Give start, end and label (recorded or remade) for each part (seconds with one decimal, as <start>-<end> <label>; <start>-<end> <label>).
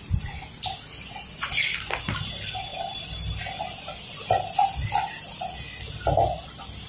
0.0-6.9 recorded